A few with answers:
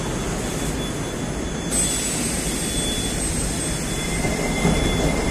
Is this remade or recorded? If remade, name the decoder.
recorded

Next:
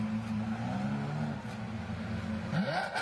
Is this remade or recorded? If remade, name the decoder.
recorded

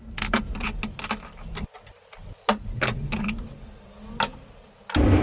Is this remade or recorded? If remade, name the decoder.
recorded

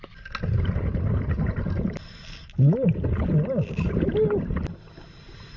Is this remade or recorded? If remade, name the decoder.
recorded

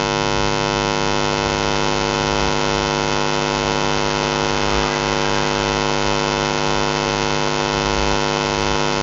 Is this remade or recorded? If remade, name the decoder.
recorded